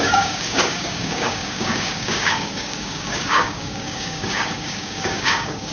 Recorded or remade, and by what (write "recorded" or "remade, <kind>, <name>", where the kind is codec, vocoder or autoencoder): remade, codec, DAC